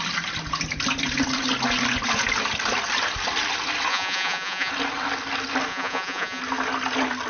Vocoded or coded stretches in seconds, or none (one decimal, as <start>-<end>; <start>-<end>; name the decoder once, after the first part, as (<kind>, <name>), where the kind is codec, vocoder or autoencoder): 3.9-4.7 (vocoder, Vocos); 5.7-6.4